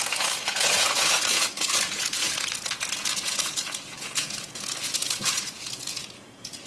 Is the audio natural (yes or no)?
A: no